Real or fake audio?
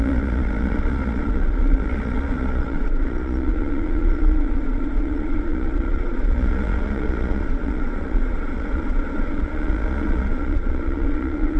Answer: fake